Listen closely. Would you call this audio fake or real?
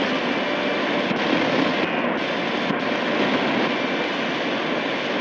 real